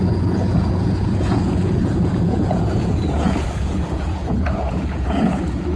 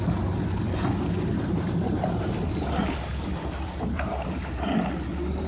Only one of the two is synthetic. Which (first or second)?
first